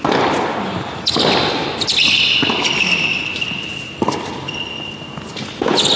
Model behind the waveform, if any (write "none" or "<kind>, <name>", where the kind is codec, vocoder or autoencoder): none